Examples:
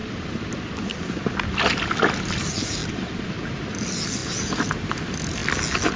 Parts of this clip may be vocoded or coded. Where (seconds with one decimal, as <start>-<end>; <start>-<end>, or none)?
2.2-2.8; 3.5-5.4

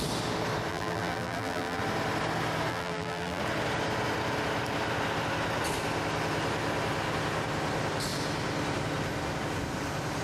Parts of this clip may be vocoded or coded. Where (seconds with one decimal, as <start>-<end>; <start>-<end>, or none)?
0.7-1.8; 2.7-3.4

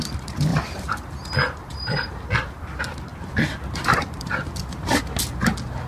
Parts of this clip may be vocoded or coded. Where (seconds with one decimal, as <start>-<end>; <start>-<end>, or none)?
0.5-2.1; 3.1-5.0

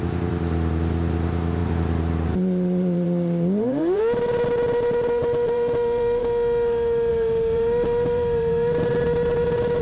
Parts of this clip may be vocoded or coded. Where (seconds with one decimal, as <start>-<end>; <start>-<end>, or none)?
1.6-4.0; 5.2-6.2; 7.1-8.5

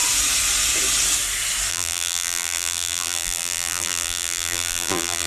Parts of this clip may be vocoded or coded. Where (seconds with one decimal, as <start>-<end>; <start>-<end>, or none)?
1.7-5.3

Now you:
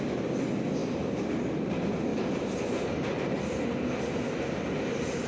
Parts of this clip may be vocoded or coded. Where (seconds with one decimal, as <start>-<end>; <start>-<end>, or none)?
2.1-3.6

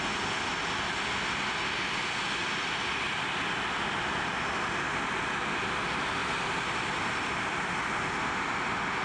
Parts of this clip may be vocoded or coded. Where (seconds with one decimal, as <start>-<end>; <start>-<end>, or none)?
2.4-4.1; 6.2-7.6